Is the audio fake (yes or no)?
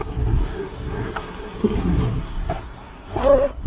yes